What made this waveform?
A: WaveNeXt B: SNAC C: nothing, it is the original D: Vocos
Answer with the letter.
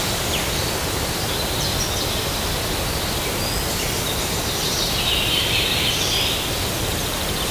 C